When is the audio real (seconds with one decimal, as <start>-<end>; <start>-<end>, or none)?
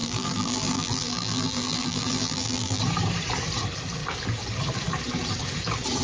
2.8-6.0